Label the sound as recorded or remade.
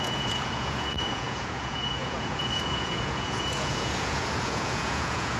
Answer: remade